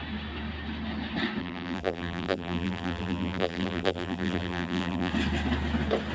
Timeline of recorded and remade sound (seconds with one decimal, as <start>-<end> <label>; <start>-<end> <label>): 0.0-1.4 recorded; 1.4-5.1 remade; 5.1-6.1 recorded